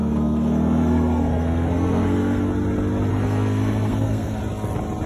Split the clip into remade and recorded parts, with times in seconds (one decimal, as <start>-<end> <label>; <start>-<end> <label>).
0.0-2.5 remade; 2.5-3.1 recorded; 3.1-4.4 remade; 4.4-5.1 recorded